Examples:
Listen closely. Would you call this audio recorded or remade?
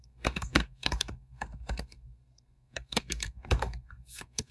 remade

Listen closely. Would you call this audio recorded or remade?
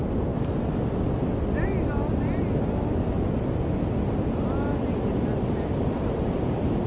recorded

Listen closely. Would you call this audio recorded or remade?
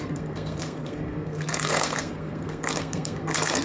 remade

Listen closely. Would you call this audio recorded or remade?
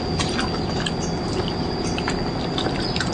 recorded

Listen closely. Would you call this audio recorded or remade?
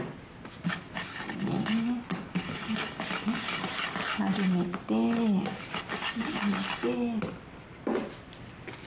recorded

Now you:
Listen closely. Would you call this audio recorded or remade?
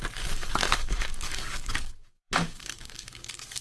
remade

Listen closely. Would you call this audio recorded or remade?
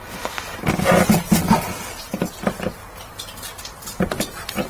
recorded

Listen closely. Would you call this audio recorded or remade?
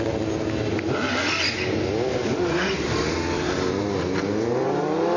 recorded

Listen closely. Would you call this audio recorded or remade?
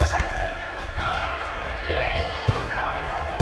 remade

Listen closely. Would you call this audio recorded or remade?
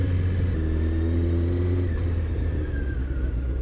recorded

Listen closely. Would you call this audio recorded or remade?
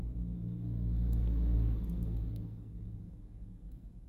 remade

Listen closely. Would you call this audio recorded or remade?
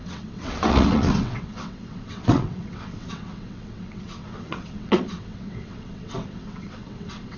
remade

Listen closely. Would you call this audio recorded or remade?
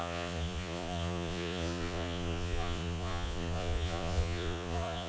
remade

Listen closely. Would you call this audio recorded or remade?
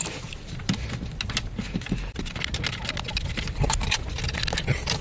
recorded